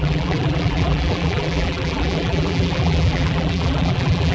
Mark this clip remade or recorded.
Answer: remade